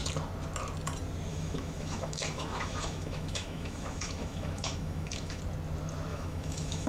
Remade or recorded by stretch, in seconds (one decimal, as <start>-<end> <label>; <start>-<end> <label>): 0.0-1.3 recorded; 1.3-5.4 remade; 5.4-6.1 recorded; 6.1-6.9 remade